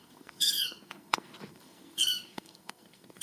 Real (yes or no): no